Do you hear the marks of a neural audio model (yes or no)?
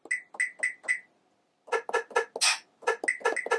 no